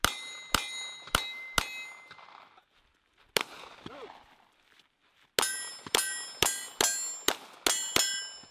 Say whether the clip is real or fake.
real